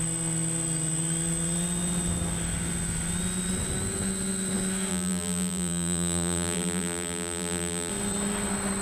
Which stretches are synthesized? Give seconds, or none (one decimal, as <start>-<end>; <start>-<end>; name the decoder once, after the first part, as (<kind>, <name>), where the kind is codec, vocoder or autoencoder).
4.9-7.9 (vocoder, BigVGAN v2)